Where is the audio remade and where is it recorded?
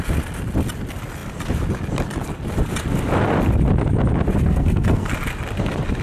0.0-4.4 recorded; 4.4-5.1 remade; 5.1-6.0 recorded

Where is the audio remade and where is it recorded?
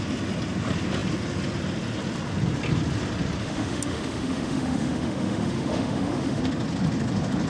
0.0-3.4 recorded; 3.4-6.4 remade; 6.4-7.5 recorded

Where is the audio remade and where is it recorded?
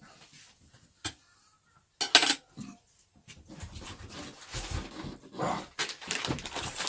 0.0-6.9 recorded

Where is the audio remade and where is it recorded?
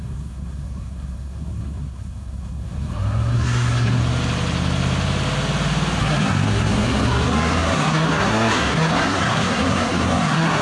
0.0-4.0 remade; 4.0-6.0 recorded; 6.0-10.6 remade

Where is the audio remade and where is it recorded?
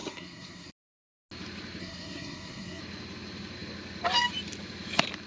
0.0-0.7 remade; 0.7-1.8 recorded; 1.8-2.8 remade; 2.8-5.3 recorded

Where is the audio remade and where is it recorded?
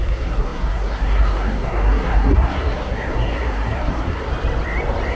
0.0-4.3 remade; 4.3-5.1 recorded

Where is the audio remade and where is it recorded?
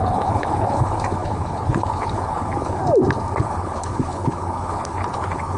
0.0-2.8 remade; 2.8-3.4 recorded; 3.4-5.6 remade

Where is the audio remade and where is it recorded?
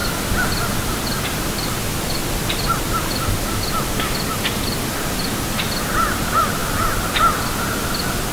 0.0-8.3 recorded